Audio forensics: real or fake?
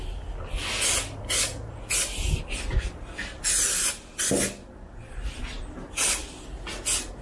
real